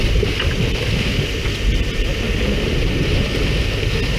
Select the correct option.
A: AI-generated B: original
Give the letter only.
B